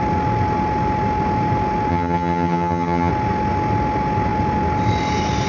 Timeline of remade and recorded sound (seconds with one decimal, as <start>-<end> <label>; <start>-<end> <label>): 0.0-1.9 recorded; 1.9-3.1 remade; 3.1-5.5 recorded